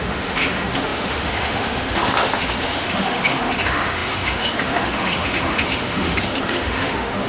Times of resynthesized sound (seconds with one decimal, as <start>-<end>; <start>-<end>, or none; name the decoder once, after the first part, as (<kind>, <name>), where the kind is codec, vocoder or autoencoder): 0.0-7.3 (autoencoder, DAC-VAE)